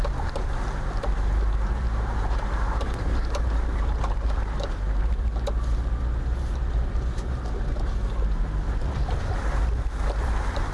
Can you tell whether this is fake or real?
fake